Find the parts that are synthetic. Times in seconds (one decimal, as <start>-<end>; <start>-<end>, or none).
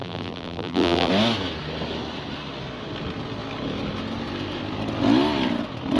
0.0-1.1